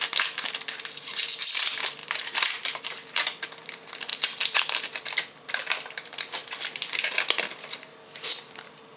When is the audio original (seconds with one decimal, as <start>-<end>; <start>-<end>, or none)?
0.0-9.0